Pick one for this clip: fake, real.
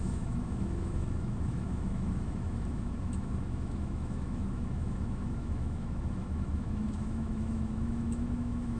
fake